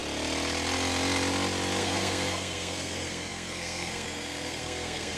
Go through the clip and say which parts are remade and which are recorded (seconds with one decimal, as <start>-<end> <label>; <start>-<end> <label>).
0.0-1.8 recorded; 1.8-5.2 remade